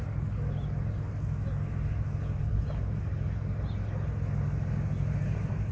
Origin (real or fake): real